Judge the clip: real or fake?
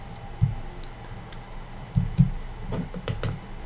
real